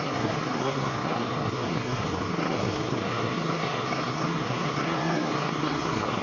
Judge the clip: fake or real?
fake